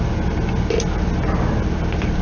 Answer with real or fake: real